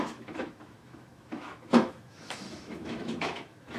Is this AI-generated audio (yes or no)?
yes